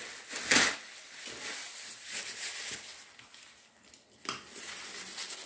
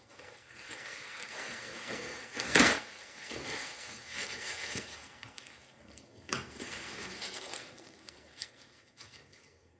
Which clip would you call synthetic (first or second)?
second